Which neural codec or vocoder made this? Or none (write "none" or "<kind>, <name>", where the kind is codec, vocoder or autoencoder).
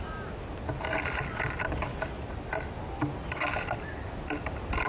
none